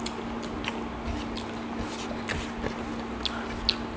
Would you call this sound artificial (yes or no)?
no